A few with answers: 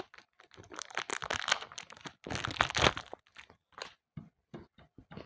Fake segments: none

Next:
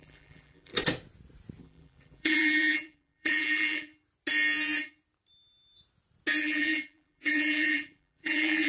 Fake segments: 0.0-0.7 (vocoder, BigVGAN v2); 1.6-3.9; 6.4-8.7

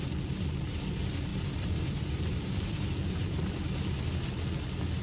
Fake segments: 1.3-3.5 (vocoder, BigVGAN v2)

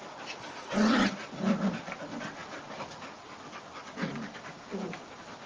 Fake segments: none